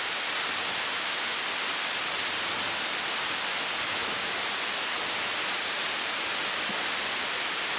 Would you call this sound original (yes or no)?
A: yes